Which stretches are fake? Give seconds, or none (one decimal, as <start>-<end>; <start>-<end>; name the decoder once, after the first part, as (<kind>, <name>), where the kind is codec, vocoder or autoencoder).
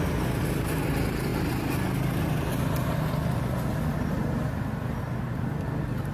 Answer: none